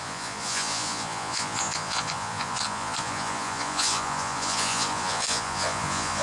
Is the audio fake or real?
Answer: fake